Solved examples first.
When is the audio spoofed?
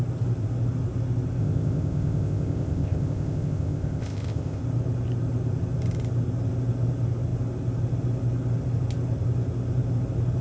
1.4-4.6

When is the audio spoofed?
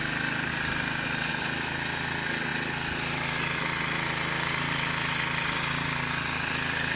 none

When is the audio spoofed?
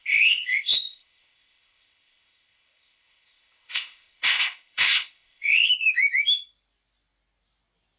0.0-5.7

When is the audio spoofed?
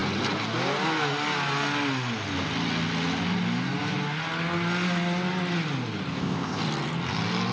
6.1-6.6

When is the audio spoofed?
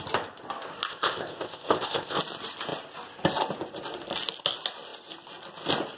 0.9-2.2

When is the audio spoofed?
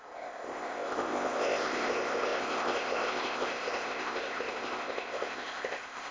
0.0-6.1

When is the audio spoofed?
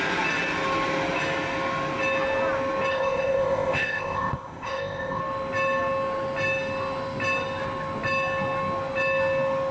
2.9-5.2